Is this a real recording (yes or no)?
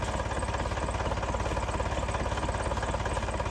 yes